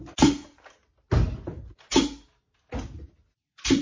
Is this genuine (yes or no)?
yes